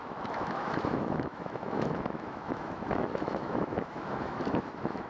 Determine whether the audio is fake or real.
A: fake